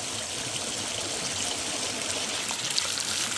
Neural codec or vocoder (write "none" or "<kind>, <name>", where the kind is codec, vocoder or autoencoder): none